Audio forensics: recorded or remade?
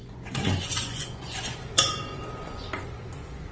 remade